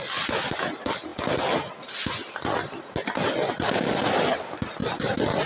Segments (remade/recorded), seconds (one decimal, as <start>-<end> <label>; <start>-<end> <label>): 0.0-5.5 recorded